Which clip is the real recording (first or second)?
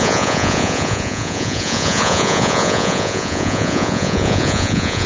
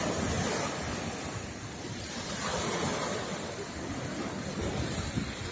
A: second